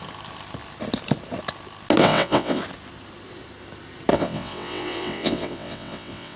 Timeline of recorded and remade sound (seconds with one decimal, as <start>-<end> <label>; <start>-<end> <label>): 0.0-2.0 recorded; 2.0-2.6 remade; 2.6-4.1 recorded; 4.1-6.4 remade